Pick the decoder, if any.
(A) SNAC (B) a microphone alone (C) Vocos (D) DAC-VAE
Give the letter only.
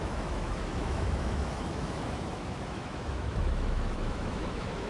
D